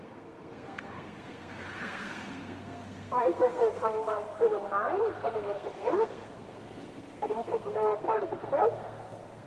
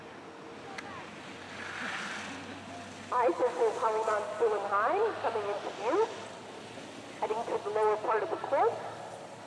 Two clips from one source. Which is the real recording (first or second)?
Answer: second